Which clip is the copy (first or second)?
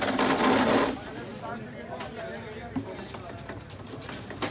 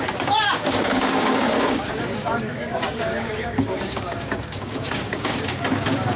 second